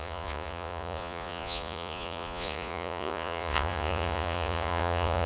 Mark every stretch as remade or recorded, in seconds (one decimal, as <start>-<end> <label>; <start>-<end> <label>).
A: 0.0-5.3 remade